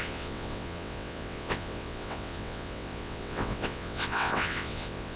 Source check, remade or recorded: remade